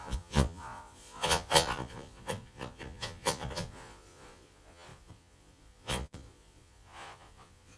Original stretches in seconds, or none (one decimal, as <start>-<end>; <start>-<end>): none